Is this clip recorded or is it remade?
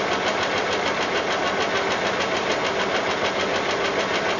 recorded